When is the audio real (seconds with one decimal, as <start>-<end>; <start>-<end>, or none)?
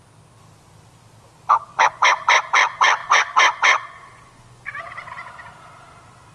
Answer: 0.0-1.7; 2.4-3.0; 4.8-6.3